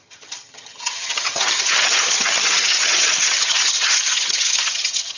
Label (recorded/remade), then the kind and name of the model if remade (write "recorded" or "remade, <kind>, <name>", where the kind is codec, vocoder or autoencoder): remade, vocoder, HiFi-GAN